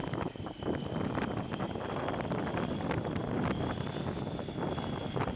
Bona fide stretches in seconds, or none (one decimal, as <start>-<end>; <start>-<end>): 2.8-5.4